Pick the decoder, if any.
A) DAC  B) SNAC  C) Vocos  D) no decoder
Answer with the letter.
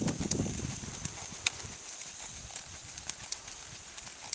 D